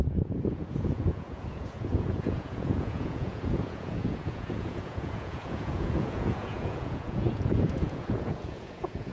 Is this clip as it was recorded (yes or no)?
no